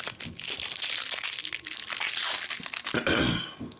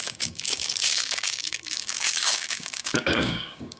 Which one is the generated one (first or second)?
second